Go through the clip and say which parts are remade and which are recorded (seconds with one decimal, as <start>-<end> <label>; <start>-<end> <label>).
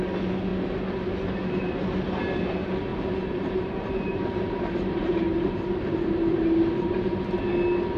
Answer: 0.0-2.9 recorded; 2.9-7.4 remade; 7.4-8.0 recorded